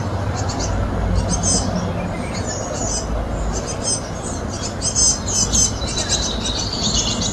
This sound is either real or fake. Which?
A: real